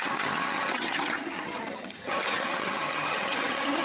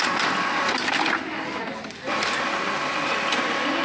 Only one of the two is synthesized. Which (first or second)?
first